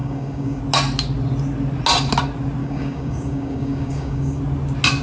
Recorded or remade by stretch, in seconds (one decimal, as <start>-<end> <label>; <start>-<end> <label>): 0.0-0.6 remade; 0.6-2.6 recorded; 2.6-4.4 remade; 4.4-5.0 recorded